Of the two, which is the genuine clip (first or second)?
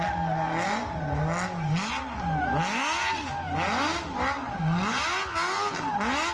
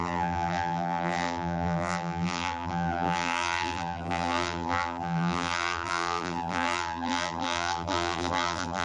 first